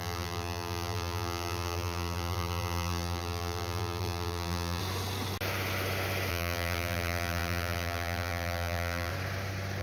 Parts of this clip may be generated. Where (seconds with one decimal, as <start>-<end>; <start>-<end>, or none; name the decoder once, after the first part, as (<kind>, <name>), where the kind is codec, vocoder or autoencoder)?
0.0-4.8 (vocoder, BigVGAN v2); 6.3-9.1